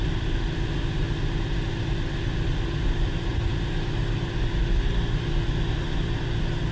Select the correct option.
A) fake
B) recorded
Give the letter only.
B